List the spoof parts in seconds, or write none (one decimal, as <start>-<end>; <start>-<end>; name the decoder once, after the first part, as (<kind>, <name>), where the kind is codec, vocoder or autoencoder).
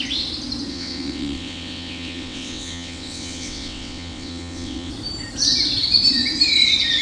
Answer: 0.7-4.9 (vocoder, WaveNeXt)